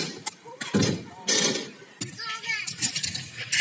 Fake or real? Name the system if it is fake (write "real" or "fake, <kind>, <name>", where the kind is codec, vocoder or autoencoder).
real